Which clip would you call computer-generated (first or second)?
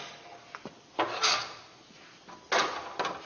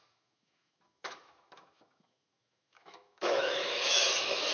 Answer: second